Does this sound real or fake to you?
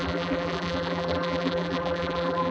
fake